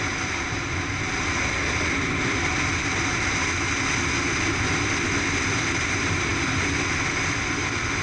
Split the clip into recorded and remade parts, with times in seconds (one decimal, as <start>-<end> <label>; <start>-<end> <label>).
0.0-8.0 recorded